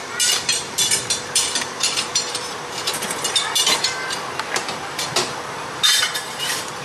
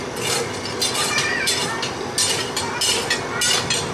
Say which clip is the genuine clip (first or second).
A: second